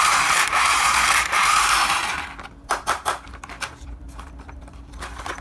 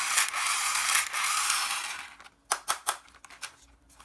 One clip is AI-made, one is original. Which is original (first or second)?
second